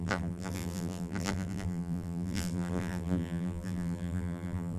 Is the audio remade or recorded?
remade